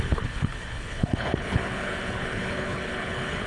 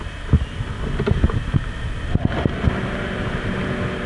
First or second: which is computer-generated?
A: first